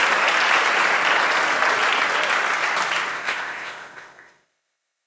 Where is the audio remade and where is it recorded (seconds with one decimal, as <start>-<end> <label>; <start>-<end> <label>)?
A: 0.0-3.1 recorded; 3.1-5.1 remade